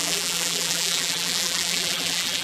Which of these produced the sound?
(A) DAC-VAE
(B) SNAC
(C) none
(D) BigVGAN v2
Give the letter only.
D